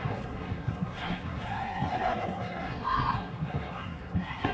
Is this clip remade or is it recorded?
remade